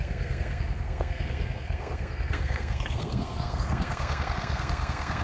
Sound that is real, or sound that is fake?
fake